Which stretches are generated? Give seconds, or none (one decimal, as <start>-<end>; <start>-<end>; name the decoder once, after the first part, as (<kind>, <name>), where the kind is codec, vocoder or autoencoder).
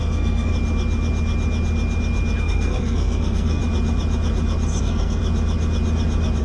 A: 0.0-0.5 (codec, SNAC); 2.4-3.6; 4.8-5.2